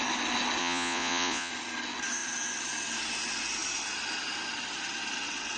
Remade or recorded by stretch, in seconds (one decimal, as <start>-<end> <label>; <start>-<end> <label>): 0.0-0.6 recorded; 0.6-1.5 remade; 1.5-5.6 recorded